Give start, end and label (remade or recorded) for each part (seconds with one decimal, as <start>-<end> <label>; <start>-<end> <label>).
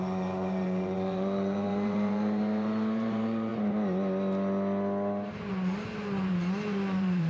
0.0-3.5 remade; 3.5-5.5 recorded; 5.5-7.3 remade